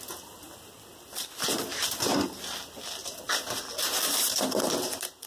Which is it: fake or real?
real